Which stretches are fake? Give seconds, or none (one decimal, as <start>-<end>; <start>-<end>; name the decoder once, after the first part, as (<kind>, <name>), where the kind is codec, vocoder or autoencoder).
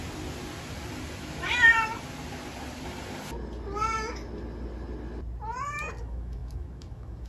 1.2-1.7 (autoencoder, DAC-VAE); 6.0-7.3